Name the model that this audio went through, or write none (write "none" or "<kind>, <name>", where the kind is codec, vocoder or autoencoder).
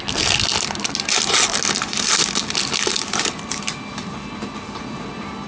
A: none